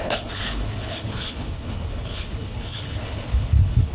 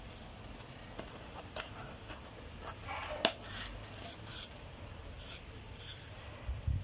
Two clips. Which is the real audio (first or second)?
second